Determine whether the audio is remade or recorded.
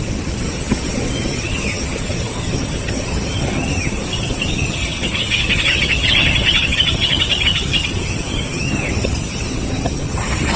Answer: remade